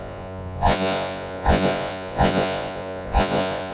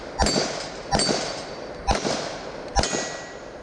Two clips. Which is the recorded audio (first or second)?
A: second